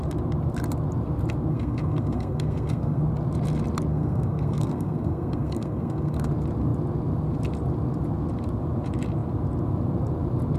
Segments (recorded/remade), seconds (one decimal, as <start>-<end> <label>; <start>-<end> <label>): 0.0-1.5 recorded; 1.5-3.0 remade; 3.0-3.9 recorded; 3.9-6.3 remade; 6.3-10.6 recorded